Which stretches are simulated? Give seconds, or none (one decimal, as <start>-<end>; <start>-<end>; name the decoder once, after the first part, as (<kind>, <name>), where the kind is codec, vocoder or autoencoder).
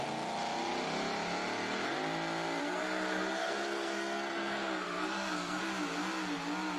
2.6-5.6 (codec, SNAC)